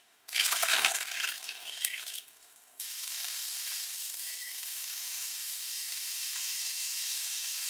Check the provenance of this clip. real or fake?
fake